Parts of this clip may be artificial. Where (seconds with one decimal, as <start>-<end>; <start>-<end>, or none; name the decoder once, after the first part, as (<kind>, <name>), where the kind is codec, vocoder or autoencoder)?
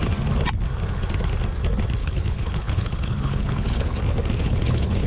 2.0-4.0 (codec, HILCodec); 4.4-5.1